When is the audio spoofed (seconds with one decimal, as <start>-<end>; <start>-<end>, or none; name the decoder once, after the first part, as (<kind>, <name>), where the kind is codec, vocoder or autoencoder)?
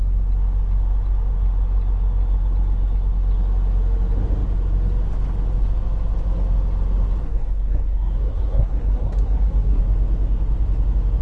7.2-9.8 (codec, SNAC)